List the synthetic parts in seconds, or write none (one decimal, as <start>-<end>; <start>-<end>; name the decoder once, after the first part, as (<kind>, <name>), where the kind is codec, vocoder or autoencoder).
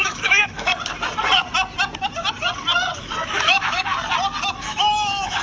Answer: 0.0-0.7 (autoencoder, DAC-VAE); 3.0-3.9; 4.5-5.4